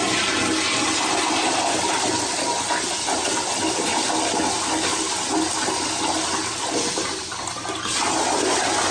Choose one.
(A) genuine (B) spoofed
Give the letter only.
A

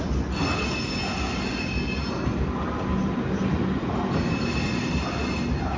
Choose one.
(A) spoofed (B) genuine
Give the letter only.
B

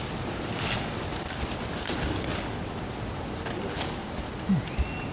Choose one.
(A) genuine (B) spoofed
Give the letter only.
A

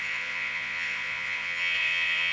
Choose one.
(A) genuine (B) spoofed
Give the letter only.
B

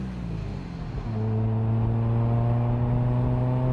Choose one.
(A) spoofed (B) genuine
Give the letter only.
B